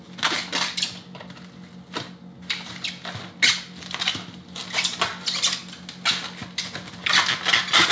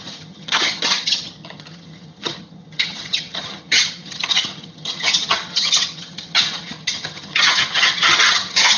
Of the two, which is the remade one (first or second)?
second